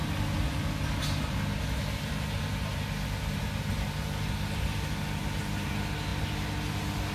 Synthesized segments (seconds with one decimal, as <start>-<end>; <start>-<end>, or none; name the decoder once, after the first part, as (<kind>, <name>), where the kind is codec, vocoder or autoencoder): none